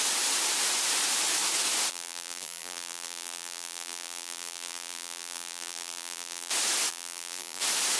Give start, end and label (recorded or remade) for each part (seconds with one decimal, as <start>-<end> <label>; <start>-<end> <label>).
0.0-1.9 recorded; 1.9-6.5 remade; 6.5-6.9 recorded; 6.9-7.6 remade; 7.6-8.0 recorded